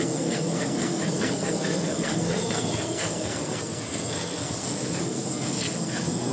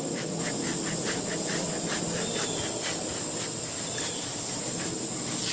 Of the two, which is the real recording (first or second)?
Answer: second